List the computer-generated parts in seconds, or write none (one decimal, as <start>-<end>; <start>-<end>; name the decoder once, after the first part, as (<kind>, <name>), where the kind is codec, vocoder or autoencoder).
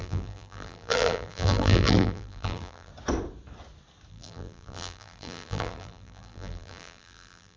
0.0-2.9 (vocoder, BigVGAN v2); 4.1-7.6